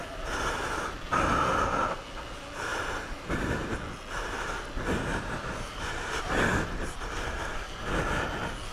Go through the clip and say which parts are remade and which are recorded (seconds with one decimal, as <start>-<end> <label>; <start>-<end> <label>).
0.0-2.7 recorded; 2.7-3.7 remade; 3.7-5.1 recorded; 5.1-7.9 remade; 7.9-8.7 recorded